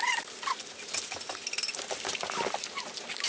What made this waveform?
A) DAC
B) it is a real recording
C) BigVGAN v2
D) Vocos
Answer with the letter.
B